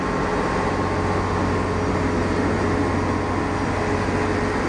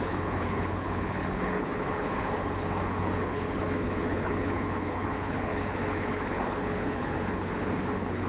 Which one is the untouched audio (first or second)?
first